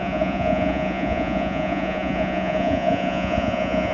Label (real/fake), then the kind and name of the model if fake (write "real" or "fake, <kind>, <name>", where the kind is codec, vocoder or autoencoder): fake, vocoder, Vocos